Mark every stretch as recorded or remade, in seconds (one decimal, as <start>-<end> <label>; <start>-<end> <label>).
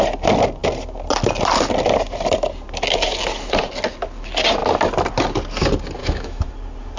0.0-6.0 recorded; 6.0-6.5 remade; 6.5-7.0 recorded